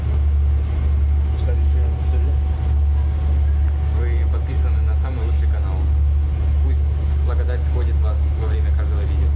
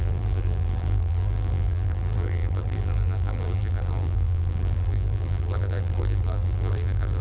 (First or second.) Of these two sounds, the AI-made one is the second